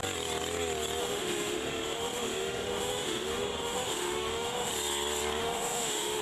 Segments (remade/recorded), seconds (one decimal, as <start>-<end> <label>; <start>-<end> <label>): 0.0-1.0 recorded; 1.0-4.7 remade; 4.7-5.4 recorded; 5.4-6.2 remade